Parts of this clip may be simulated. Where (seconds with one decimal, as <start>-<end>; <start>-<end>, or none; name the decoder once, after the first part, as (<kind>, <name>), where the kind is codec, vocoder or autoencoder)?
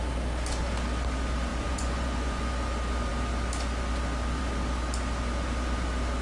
1.5-2.5 (vocoder, Vocos)